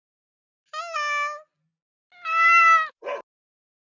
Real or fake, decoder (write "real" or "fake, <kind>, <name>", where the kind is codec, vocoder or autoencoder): real